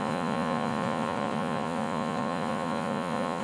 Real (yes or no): no